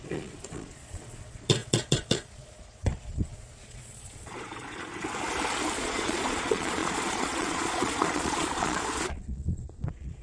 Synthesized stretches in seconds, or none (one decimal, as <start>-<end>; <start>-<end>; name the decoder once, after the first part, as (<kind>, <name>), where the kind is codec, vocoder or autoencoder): 0.0-4.9 (vocoder, Vocos); 5.7-10.2